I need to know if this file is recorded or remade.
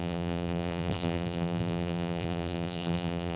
remade